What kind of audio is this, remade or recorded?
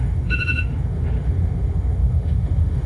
remade